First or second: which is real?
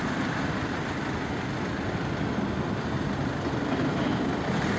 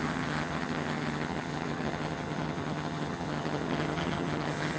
first